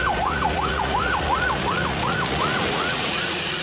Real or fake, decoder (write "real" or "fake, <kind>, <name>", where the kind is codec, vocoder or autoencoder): fake, vocoder, Vocos